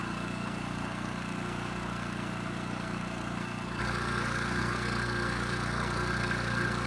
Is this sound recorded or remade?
remade